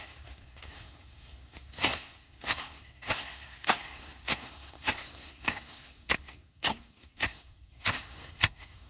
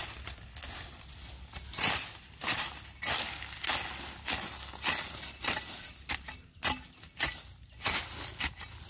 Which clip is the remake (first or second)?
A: first